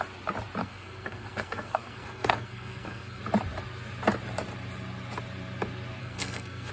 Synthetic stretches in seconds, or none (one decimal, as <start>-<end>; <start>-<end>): 0.6-3.2; 6.0-6.7